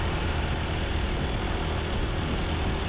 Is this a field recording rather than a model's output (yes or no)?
yes